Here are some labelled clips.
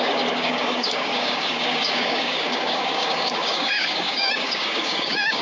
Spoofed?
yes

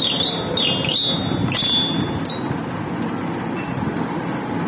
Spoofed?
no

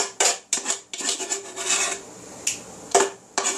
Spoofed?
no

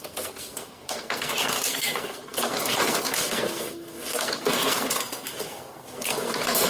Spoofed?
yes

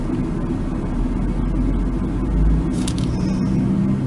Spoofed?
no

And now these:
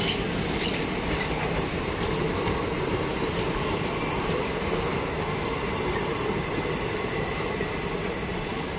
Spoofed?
no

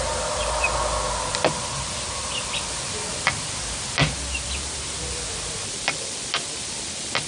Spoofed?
no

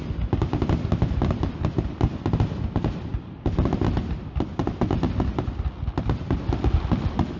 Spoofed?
no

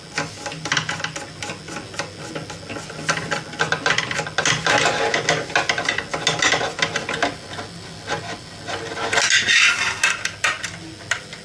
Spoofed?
no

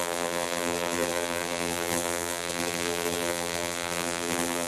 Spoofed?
yes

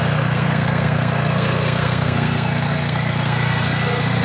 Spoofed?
yes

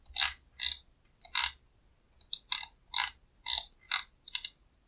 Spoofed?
no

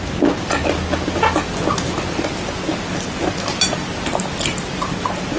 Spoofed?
no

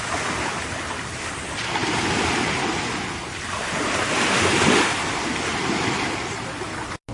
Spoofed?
no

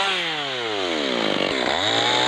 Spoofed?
no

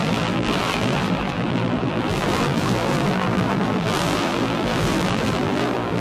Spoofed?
yes